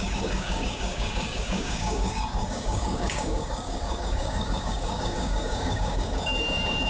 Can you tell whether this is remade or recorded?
remade